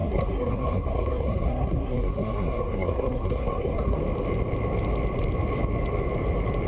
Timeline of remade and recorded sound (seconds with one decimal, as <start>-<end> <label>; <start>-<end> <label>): 0.0-4.0 remade; 4.0-6.7 recorded